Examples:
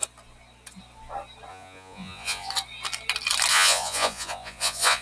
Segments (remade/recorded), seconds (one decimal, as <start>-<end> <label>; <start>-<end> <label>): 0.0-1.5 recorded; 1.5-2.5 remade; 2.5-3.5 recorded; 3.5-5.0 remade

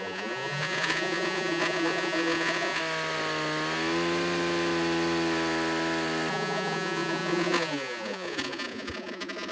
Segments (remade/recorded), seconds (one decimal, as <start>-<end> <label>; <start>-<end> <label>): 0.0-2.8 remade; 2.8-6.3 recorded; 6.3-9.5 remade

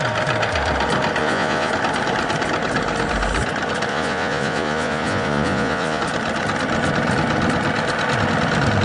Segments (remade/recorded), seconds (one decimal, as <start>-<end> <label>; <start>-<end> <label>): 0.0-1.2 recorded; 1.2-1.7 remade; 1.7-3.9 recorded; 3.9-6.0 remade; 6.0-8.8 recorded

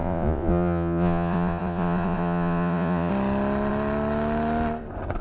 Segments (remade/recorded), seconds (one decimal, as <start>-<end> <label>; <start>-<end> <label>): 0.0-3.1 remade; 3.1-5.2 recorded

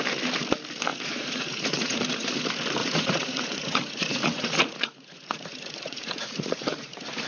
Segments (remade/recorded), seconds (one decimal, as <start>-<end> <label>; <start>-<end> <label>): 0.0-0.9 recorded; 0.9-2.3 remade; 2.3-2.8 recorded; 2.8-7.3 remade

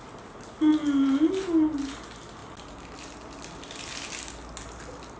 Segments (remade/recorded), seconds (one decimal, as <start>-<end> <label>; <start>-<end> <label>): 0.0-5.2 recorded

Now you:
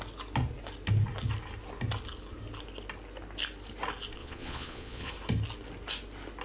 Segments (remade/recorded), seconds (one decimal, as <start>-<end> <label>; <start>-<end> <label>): 0.0-4.2 recorded; 4.2-5.1 remade; 5.1-6.4 recorded